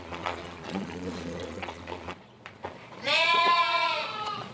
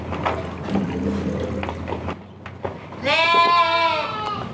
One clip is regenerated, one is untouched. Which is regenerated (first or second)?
first